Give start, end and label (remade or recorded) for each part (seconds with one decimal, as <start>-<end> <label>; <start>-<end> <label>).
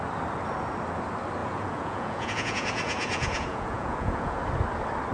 0.0-1.4 recorded; 1.4-4.4 remade; 4.4-5.1 recorded